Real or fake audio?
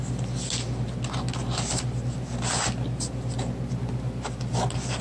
real